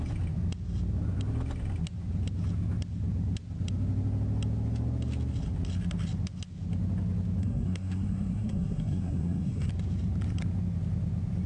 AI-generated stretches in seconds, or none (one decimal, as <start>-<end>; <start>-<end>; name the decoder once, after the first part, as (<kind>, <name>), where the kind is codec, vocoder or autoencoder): 7.4-9.7 (codec, SNAC)